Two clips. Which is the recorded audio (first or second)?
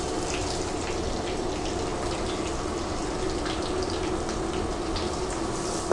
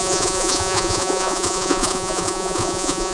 first